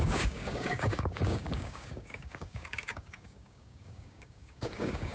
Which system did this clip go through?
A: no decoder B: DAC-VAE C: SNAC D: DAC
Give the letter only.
D